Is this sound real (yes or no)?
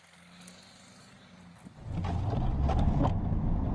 yes